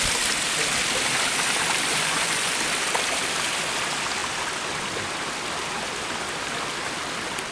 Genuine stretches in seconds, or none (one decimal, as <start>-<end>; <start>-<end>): 0.0-1.9; 2.6-7.5